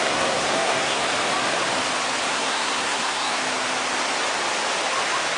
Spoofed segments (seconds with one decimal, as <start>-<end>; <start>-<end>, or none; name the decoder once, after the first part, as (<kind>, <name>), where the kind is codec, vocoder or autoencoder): 0.0-1.0 (codec, SNAC); 2.3-3.4